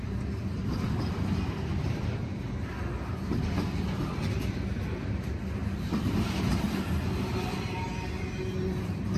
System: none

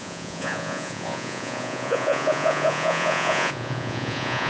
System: vocoder, Vocos